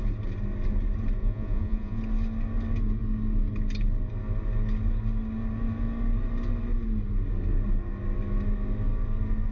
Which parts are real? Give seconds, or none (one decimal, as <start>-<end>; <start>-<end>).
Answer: 0.0-1.2; 2.0-9.5

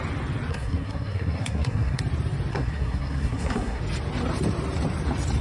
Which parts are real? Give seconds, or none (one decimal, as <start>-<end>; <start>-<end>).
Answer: 0.0-0.5; 2.0-2.5; 3.8-5.4

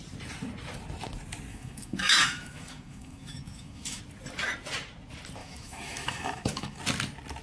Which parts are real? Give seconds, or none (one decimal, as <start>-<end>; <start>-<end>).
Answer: 0.0-1.5; 4.0-5.4; 6.8-7.4